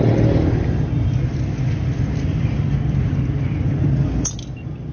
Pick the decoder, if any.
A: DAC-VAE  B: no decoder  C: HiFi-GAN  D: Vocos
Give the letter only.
B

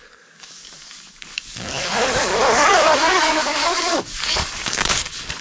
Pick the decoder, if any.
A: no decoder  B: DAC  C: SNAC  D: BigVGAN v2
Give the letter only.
B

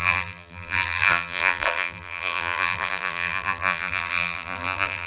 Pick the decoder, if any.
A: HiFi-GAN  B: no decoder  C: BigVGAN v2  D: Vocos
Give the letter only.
C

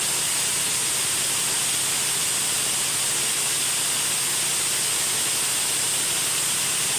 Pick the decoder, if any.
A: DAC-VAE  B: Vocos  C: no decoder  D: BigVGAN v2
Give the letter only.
C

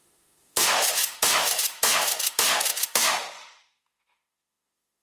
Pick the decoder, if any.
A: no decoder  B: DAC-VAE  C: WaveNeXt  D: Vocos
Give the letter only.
B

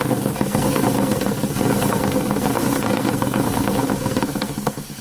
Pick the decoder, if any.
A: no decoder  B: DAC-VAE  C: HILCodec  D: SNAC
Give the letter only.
D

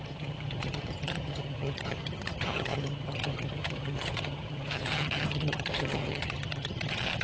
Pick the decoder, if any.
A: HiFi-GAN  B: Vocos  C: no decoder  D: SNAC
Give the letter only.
A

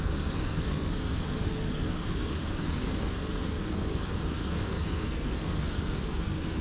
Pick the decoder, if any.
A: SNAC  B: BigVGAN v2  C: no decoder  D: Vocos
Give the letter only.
A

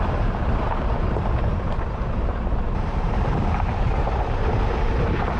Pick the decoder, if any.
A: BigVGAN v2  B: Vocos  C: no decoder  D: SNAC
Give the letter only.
A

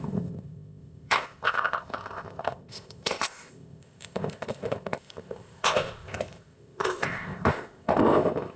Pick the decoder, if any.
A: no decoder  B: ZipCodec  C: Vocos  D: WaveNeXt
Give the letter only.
B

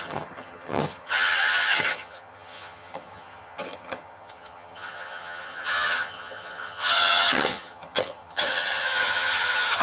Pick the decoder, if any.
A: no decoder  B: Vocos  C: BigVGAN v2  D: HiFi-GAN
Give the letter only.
D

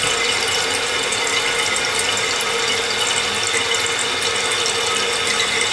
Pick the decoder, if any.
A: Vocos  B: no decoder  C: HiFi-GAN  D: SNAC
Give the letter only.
B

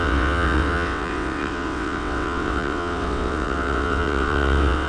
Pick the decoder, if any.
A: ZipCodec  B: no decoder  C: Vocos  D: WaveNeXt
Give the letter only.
D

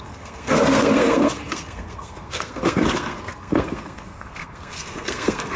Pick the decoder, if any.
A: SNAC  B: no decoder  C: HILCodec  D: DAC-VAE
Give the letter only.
A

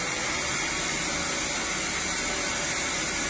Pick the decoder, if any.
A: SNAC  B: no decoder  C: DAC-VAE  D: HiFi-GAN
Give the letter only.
B